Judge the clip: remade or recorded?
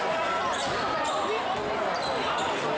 recorded